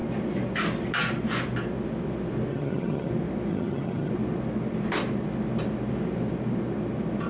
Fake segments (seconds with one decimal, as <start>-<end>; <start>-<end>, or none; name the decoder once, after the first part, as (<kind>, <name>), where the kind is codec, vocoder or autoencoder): 2.5-3.1 (vocoder, HiFi-GAN); 3.5-4.1